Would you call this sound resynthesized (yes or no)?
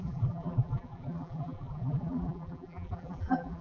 yes